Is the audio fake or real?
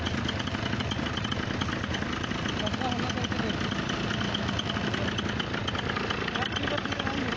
real